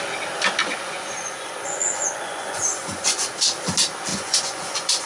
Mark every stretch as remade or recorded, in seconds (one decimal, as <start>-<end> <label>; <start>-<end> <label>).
0.0-0.6 recorded; 0.6-3.3 remade; 3.3-4.1 recorded; 4.1-5.1 remade